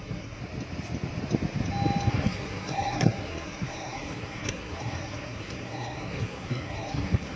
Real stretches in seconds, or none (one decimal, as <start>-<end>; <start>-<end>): 0.4-2.1